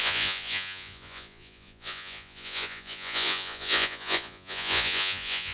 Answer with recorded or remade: remade